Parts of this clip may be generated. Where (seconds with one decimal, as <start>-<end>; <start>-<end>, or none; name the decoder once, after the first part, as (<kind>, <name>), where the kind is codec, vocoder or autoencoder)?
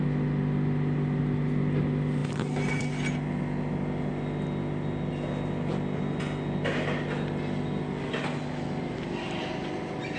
none